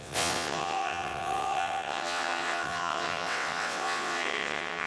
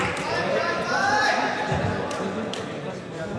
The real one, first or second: second